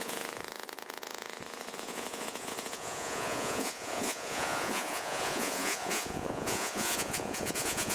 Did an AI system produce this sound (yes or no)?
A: yes